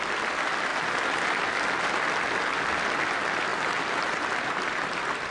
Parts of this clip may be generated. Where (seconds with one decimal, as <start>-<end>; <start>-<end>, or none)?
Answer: none